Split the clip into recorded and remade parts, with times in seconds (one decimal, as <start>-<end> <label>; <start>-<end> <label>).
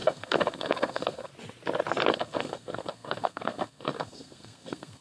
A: 0.0-1.3 remade; 1.3-2.1 recorded; 2.1-5.0 remade